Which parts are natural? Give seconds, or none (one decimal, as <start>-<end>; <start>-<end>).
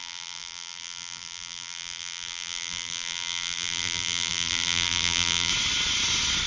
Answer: 5.5-6.5